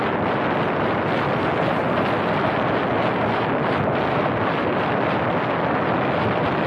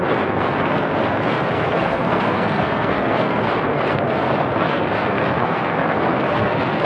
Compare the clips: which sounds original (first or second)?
first